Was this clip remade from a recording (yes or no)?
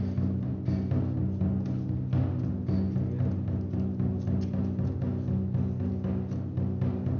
no